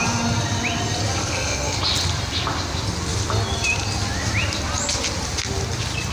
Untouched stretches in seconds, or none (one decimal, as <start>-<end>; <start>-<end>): 0.0-1.2; 1.8-6.1